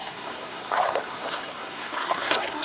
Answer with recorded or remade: remade